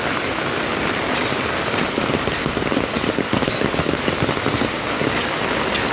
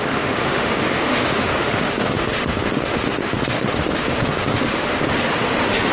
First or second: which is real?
first